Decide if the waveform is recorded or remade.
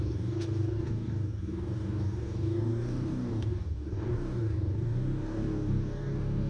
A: remade